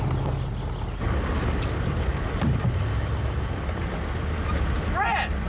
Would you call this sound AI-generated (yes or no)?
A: no